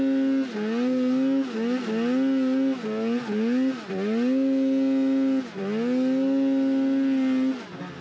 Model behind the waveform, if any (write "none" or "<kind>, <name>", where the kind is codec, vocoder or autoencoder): none